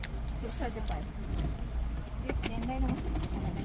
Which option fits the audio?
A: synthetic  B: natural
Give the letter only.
B